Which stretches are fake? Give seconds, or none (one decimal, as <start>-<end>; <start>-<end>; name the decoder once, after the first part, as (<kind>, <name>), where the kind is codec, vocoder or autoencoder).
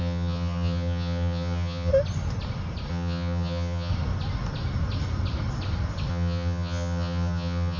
0.0-1.9 (vocoder, HiFi-GAN); 2.9-3.9; 6.1-7.8